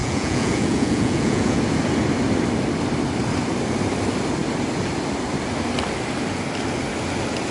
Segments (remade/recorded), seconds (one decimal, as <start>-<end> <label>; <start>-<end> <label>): 0.0-1.6 remade; 1.6-7.5 recorded

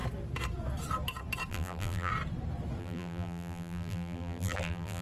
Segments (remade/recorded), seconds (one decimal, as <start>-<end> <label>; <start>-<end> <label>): 0.0-1.5 recorded; 1.5-2.1 remade; 2.1-2.8 recorded; 2.8-5.0 remade

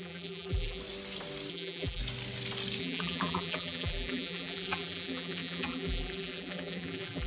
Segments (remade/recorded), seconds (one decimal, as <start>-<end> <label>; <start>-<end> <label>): 0.0-0.8 remade; 0.8-1.5 recorded; 1.5-2.0 remade; 2.0-2.8 recorded; 2.8-7.3 remade

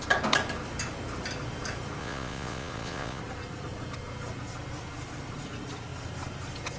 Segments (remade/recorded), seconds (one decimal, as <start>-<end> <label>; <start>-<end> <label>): 0.0-2.0 recorded; 2.0-3.2 remade; 3.2-6.8 recorded

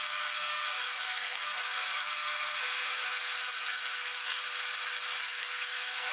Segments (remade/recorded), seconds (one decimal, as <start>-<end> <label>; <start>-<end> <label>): 0.0-4.4 remade; 4.4-5.2 recorded; 5.2-6.1 remade

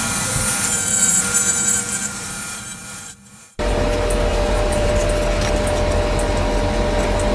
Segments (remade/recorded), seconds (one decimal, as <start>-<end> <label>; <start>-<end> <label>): 0.0-2.0 recorded; 2.0-3.7 remade; 3.7-4.3 recorded; 4.3-4.9 remade; 4.9-7.3 recorded

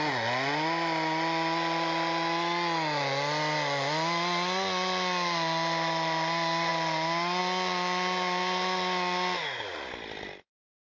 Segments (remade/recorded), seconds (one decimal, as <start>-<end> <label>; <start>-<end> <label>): 0.0-10.9 recorded